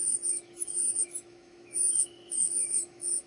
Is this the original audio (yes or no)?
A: no